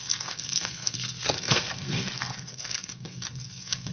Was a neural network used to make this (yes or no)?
yes